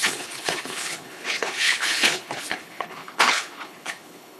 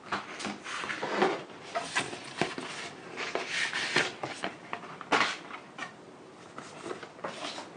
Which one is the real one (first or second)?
second